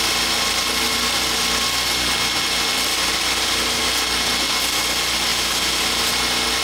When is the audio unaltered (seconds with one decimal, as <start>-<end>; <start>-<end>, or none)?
0.0-6.6